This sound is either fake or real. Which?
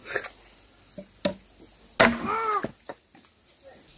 real